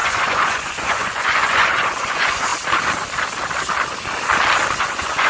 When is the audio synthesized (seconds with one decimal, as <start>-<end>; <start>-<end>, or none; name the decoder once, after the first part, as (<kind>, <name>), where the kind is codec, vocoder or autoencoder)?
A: 0.0-2.5 (vocoder, Vocos); 4.8-5.3